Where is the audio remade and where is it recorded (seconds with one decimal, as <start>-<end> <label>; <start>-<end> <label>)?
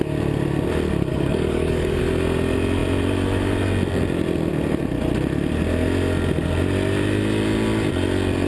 0.0-1.1 recorded; 1.1-2.0 remade; 2.0-8.5 recorded